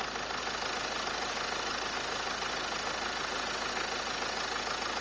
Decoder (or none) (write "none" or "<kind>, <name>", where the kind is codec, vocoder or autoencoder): none